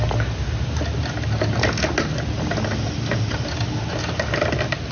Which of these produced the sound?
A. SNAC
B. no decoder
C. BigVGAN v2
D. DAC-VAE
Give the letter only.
B